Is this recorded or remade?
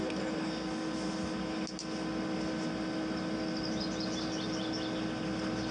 recorded